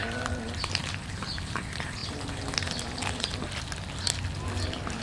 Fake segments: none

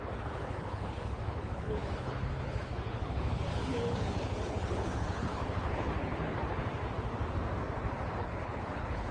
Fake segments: 0.0-6.6 (codec, HILCodec); 8.2-9.1

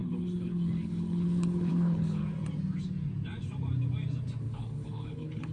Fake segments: 0.0-2.2 (codec, HILCodec); 4.4-5.5

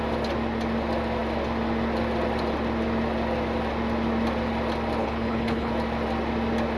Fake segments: 5.0-5.7 (codec, HILCodec)